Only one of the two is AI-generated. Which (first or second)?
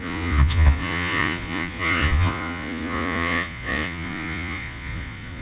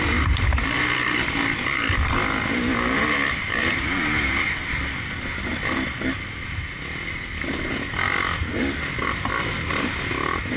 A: first